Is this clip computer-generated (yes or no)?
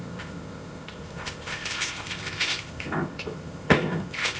yes